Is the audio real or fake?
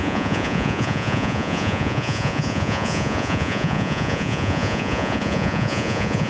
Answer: fake